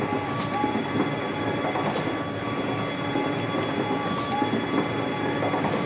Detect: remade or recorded recorded